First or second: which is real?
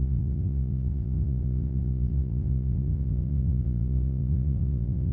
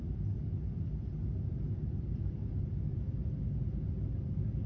second